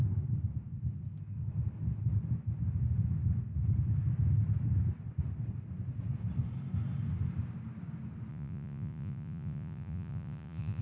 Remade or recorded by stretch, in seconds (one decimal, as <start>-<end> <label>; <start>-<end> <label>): 0.0-8.3 recorded; 8.3-10.8 remade